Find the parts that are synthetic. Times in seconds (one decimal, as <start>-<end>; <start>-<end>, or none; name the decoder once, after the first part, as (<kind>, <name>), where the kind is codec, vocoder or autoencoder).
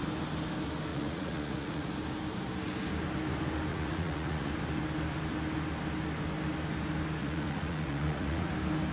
0.9-1.9 (vocoder, Vocos); 3.7-4.5; 7.2-8.5